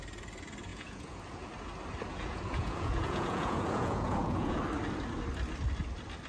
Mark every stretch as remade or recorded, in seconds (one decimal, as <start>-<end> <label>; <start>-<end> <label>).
0.0-0.7 recorded; 0.7-1.2 remade; 1.2-2.1 recorded; 2.1-4.6 remade; 4.6-6.3 recorded